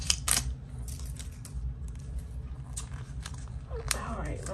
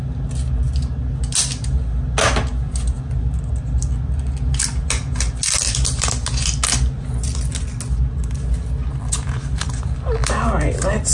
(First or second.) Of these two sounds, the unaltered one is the second